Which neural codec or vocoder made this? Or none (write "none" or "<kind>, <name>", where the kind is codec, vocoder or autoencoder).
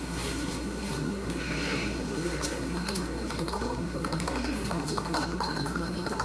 codec, SNAC